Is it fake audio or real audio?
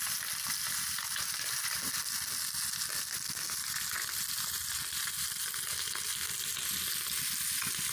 real